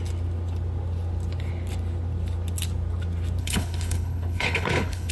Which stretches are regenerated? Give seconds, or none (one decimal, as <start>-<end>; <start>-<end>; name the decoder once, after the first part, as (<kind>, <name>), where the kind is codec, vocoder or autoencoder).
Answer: 3.4-5.1 (codec, HILCodec)